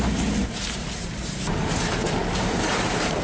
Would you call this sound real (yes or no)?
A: no